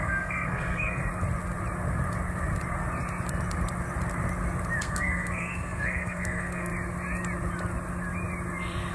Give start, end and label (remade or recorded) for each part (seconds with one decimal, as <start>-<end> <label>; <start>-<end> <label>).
0.0-1.0 remade; 1.0-4.8 recorded; 4.8-6.7 remade; 6.7-8.9 recorded